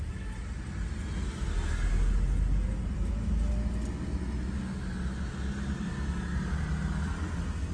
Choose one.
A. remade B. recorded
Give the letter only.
B